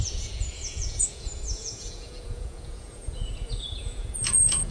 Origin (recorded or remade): remade